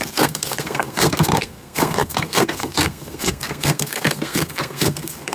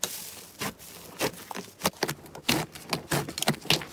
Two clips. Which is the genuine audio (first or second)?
second